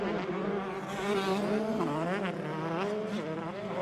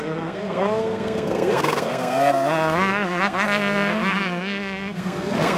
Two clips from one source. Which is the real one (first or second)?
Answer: first